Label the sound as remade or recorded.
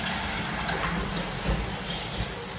recorded